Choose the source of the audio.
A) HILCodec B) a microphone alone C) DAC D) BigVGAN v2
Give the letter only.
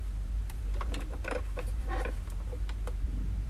D